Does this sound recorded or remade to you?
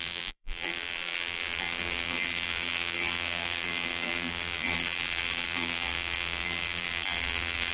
remade